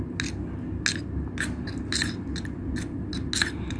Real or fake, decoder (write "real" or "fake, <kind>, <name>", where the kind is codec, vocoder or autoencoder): real